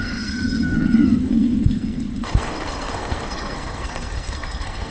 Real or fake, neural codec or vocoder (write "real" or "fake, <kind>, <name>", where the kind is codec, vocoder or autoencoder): fake, codec, SNAC